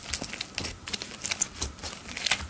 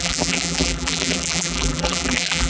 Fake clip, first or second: second